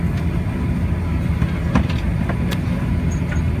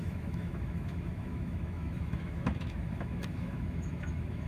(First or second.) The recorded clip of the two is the first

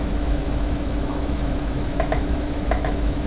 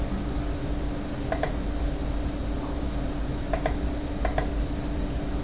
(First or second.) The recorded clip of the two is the second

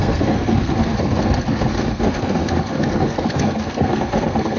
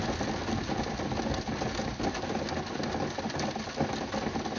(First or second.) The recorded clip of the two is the second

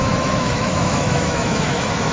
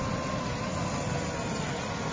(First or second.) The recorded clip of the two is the second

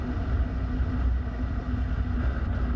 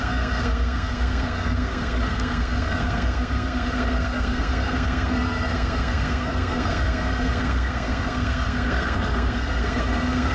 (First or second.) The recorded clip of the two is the first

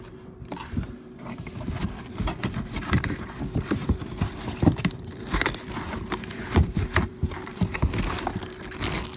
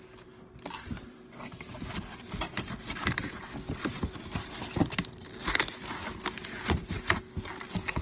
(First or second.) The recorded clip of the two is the second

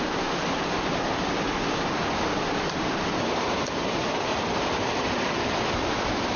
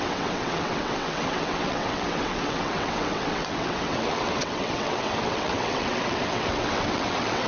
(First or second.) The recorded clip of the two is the first